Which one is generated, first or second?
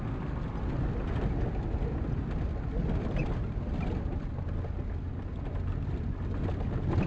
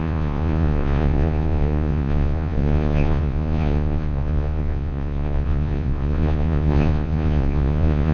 second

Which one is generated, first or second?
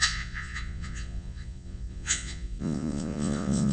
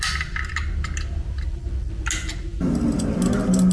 first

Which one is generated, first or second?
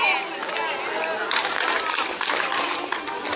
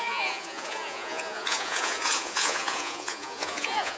second